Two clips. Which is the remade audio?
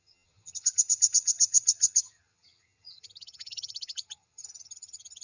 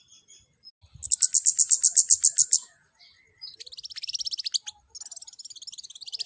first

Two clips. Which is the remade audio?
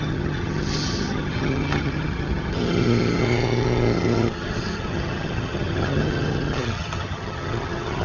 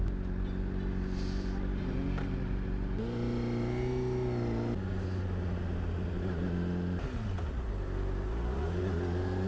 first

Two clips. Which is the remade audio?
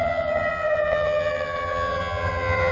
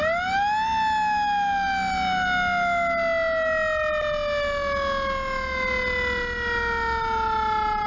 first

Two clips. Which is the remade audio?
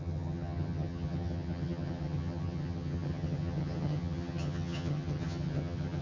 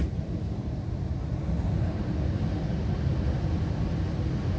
first